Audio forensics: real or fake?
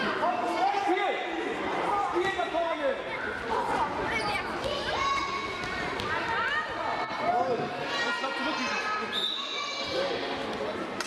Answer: real